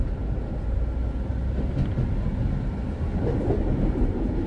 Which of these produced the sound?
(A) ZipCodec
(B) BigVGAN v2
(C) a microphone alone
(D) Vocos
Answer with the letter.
C